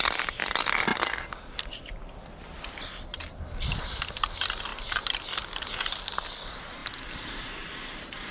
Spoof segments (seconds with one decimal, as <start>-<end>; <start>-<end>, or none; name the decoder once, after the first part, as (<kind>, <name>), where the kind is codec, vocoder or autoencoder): 3.1-4.2 (vocoder, BigVGAN v2); 4.7-6.0